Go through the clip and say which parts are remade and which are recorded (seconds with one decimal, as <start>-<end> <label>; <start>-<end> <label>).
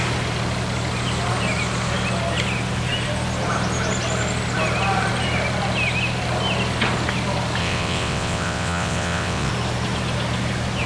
0.0-7.6 recorded; 7.6-9.5 remade; 9.5-10.9 recorded